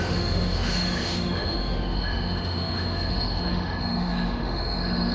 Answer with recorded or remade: remade